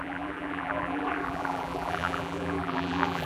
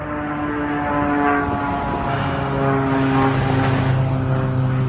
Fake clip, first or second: first